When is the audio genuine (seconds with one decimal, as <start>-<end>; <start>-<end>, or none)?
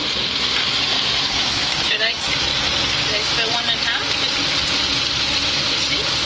0.0-1.2; 2.5-6.3